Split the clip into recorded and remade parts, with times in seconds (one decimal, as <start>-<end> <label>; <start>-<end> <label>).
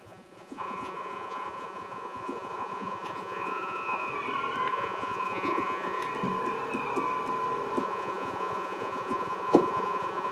0.0-4.1 remade; 4.1-4.7 recorded; 4.7-6.0 remade; 6.0-7.8 recorded; 7.8-10.3 remade